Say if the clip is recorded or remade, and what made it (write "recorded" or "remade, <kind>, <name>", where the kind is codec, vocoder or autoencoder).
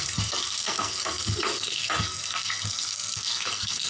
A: remade, codec, SNAC